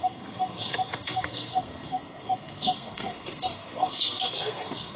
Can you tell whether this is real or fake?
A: fake